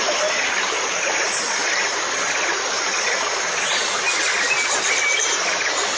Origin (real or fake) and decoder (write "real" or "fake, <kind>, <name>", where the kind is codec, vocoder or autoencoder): real